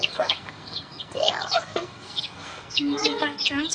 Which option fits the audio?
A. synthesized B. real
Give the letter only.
A